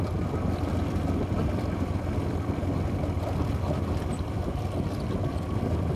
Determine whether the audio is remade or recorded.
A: recorded